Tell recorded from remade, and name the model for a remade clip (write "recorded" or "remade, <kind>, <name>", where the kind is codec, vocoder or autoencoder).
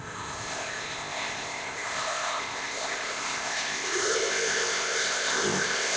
remade, codec, ZipCodec